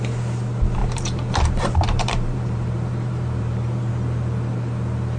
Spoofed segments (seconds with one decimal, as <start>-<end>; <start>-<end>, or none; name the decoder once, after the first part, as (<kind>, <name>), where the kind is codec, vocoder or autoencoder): 0.8-3.9 (vocoder, BigVGAN v2)

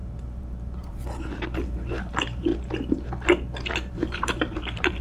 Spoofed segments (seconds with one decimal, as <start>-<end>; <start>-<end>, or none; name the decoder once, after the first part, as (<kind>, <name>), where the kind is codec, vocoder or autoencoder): 0.0-2.5 (vocoder, BigVGAN v2); 3.9-5.0

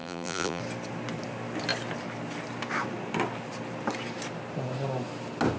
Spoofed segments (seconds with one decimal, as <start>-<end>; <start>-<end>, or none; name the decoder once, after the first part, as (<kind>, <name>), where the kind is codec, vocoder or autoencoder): 0.0-0.6 (vocoder, BigVGAN v2)

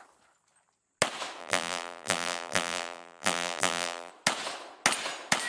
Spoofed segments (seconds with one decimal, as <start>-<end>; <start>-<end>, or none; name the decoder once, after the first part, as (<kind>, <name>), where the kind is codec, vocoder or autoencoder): 1.4-4.1 (vocoder, BigVGAN v2)

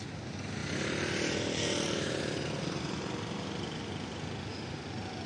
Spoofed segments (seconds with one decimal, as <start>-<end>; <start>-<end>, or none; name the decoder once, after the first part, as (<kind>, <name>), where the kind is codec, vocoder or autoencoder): 0.6-3.8 (vocoder, BigVGAN v2)

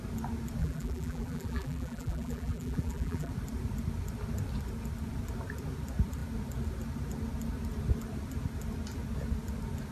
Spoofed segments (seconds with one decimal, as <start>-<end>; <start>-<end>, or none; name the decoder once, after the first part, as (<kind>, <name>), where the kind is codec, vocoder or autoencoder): 0.6-3.3 (vocoder, BigVGAN v2)